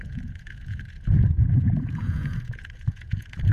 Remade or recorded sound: remade